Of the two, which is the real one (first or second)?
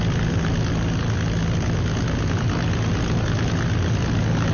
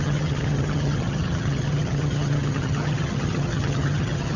first